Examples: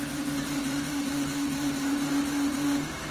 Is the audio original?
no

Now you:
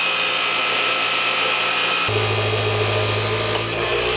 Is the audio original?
yes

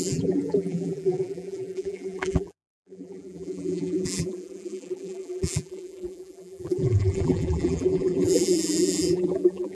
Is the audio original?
no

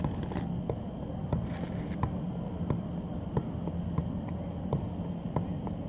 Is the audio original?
yes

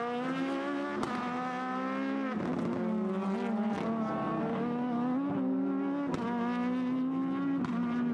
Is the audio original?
yes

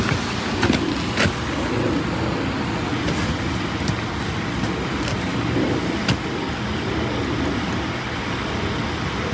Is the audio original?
yes